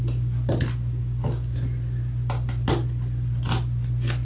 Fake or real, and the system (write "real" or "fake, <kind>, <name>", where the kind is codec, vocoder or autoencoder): real